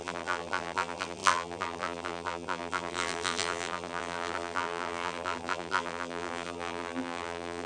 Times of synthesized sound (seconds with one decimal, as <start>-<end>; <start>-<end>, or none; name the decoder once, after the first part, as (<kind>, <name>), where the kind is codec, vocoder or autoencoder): 0.0-7.7 (vocoder, BigVGAN v2)